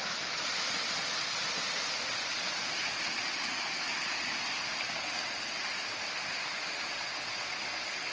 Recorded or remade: recorded